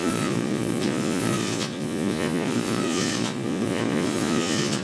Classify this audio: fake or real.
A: fake